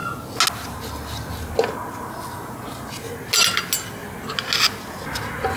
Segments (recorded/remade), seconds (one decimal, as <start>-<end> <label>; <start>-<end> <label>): 0.0-5.6 recorded